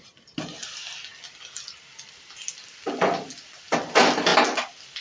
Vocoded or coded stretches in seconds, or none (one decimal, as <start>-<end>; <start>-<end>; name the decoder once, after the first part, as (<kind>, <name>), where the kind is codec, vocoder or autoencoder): none